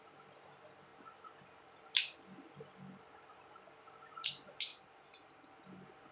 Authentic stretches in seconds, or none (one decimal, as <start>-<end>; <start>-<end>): 0.0-4.7; 5.5-6.1